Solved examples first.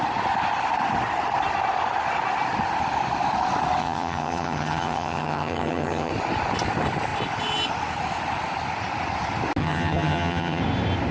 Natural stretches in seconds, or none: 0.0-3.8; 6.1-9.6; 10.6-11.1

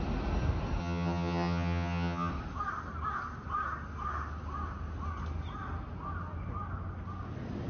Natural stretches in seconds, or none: 0.0-0.8; 2.3-7.7

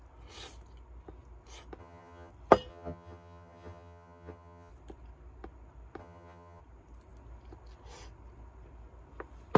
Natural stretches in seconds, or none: 0.0-1.8; 2.3-2.7; 4.7-6.0; 6.6-9.6